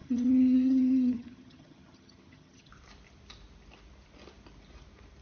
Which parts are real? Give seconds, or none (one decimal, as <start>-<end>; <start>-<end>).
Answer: 2.7-5.2